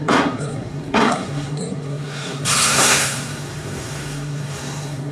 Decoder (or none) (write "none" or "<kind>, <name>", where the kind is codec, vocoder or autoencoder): codec, SNAC